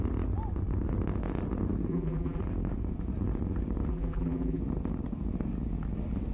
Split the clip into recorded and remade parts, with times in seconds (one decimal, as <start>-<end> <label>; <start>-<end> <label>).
0.0-1.9 recorded; 1.9-2.4 remade; 2.4-3.9 recorded; 3.9-4.6 remade; 4.6-6.3 recorded